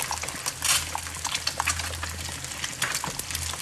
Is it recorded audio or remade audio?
recorded